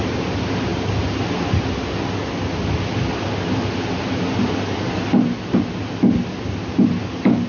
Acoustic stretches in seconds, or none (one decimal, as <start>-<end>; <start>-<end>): 0.0-7.5